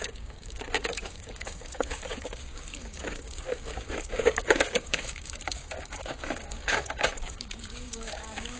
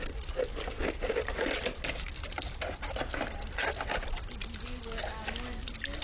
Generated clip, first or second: first